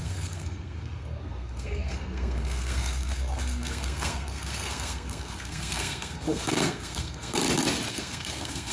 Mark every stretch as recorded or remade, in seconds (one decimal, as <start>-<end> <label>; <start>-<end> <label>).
0.0-7.4 remade; 7.4-7.9 recorded; 7.9-8.7 remade